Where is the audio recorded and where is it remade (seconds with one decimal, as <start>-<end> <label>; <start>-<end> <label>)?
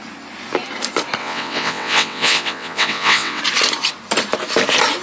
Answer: 0.0-1.2 recorded; 1.2-3.4 remade; 3.4-5.0 recorded